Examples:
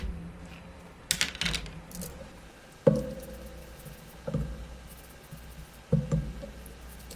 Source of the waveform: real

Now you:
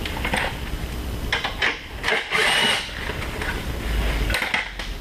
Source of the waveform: real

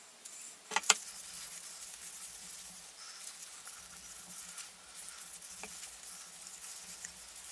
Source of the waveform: real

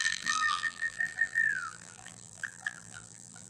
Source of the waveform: fake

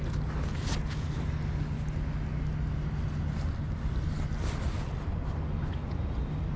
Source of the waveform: real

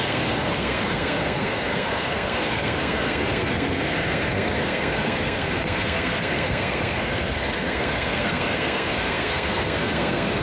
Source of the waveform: fake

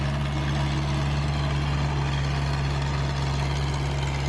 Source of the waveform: real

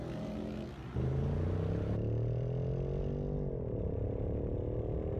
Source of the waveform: real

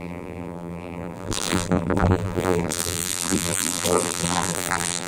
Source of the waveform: fake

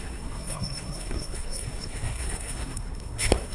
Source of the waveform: fake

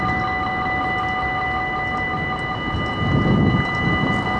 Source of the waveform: real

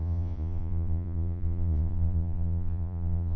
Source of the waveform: fake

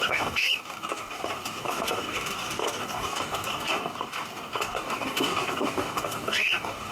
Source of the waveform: fake